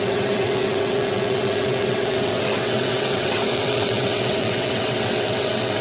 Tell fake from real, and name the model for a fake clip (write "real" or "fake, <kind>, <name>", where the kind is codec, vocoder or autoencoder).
fake, vocoder, WaveNeXt